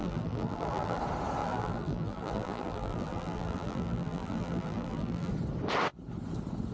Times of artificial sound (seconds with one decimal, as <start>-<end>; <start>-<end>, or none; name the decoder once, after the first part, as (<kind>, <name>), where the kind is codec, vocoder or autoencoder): 0.0-1.0 (vocoder, BigVGAN v2); 1.4-5.3

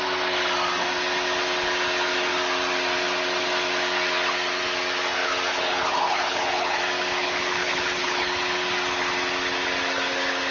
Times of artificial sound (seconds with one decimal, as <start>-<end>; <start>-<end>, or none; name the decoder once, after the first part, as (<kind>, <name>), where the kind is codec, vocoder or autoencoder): 5.5-6.8 (codec, HILCodec); 7.2-8.2

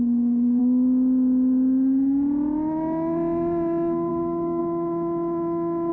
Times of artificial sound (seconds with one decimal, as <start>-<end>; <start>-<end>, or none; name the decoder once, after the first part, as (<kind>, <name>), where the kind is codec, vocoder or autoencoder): 0.0-0.6 (codec, DAC); 4.1-4.6

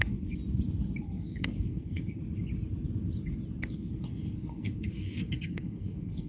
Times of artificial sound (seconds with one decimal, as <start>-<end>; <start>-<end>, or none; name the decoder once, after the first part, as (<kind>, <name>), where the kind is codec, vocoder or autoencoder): 0.0-0.4 (codec, SNAC); 1.0-2.2; 3.7-6.3

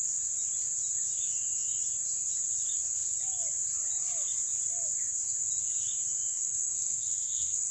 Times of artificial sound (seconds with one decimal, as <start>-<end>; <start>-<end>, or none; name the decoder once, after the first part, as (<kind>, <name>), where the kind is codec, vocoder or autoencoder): 6.3-7.7 (codec, SNAC)